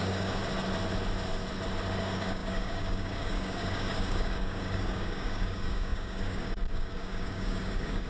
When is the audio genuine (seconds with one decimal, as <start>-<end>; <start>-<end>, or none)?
0.4-2.0